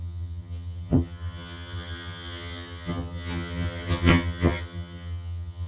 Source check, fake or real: fake